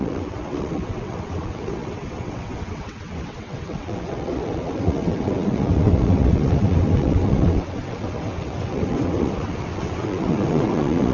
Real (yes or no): no